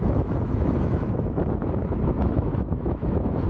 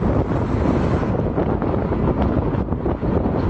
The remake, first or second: first